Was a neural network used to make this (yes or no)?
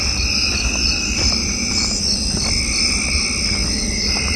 no